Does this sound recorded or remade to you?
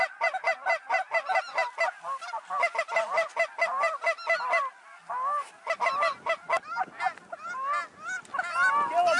recorded